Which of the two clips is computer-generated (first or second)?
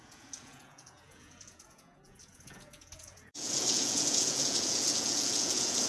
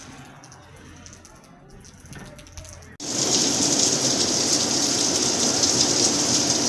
first